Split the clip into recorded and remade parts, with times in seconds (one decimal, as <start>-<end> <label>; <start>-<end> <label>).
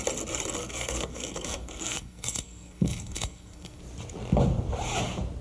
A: 0.0-0.6 recorded; 0.6-3.8 remade; 3.8-5.4 recorded